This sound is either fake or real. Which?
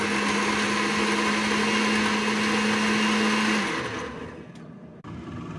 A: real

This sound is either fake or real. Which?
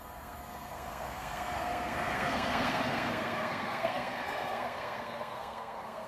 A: fake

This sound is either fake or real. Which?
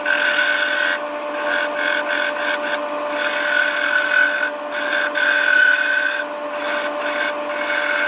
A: real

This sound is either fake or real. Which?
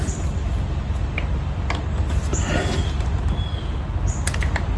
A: real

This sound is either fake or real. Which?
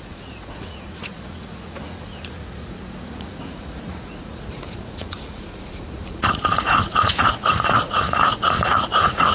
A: fake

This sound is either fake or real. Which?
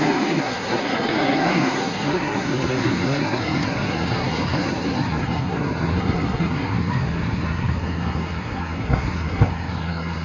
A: fake